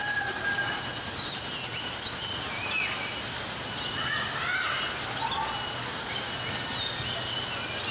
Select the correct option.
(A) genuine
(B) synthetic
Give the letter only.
A